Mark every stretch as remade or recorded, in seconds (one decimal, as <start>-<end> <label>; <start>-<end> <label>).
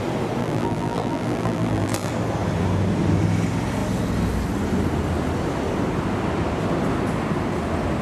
0.0-0.4 recorded; 0.4-2.1 remade; 2.1-8.0 recorded